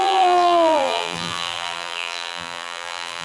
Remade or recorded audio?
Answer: remade